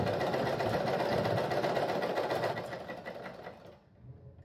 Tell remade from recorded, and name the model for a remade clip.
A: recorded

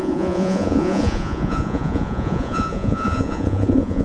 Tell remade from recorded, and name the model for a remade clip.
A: remade, vocoder, Vocos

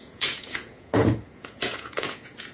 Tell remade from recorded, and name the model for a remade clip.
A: remade, vocoder, Vocos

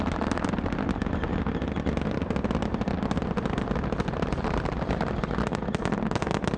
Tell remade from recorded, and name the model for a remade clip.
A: recorded